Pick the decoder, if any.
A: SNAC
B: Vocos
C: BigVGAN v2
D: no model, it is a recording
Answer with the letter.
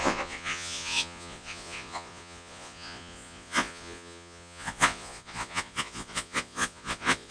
B